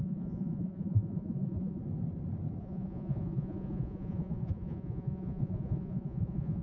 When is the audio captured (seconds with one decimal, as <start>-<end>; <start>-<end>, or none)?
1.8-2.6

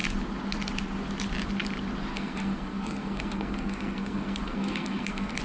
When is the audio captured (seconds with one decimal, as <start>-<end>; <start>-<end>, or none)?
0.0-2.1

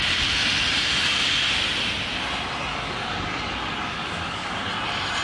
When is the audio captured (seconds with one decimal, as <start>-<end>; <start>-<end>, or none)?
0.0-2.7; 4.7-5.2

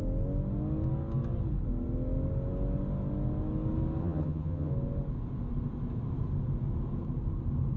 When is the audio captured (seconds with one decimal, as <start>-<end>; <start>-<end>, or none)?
0.0-4.0; 4.7-7.8